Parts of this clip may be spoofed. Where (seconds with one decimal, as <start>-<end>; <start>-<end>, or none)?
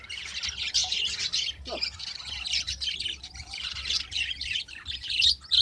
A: none